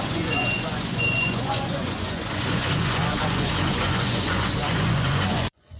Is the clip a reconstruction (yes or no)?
yes